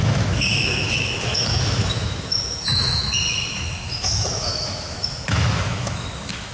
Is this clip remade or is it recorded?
remade